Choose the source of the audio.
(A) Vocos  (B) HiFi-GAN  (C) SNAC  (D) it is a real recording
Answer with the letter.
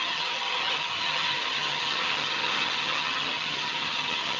B